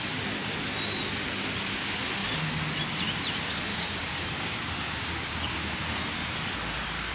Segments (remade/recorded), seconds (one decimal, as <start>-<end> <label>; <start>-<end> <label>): 0.0-3.7 recorded; 3.7-6.0 remade; 6.0-7.1 recorded